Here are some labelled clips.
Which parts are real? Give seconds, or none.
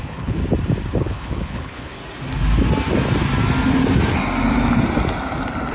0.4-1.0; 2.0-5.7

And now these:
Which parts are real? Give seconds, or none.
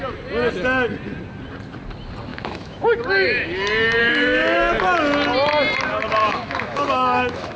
0.0-2.3; 3.0-4.0; 4.6-6.2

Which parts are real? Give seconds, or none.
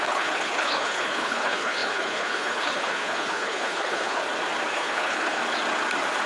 4.2-4.7; 5.4-6.3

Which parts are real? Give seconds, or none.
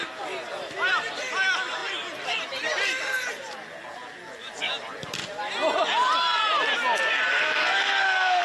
0.0-7.3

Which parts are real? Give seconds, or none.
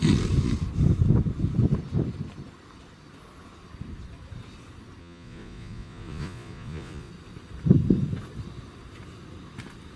0.0-5.0; 7.1-10.0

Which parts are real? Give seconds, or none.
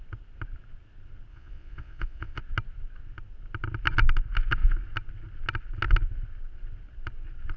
0.0-1.3; 2.4-7.6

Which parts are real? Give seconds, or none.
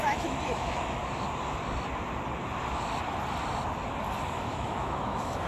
1.0-4.3